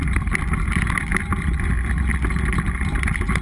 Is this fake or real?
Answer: real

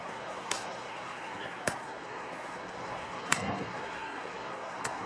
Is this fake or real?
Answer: fake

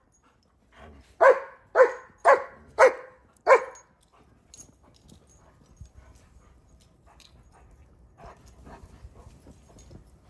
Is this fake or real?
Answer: real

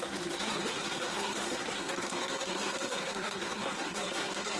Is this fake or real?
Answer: fake